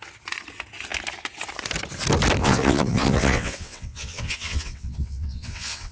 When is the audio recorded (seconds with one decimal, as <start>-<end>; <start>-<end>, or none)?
0.0-2.4